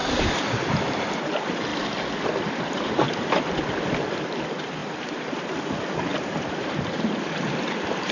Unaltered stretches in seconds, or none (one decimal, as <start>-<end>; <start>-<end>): 0.7-1.7; 3.4-4.8; 5.6-6.1